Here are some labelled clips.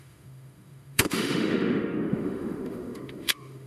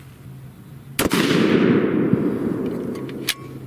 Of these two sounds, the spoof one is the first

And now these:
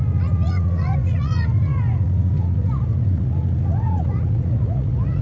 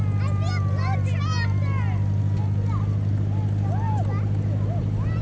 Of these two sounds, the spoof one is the first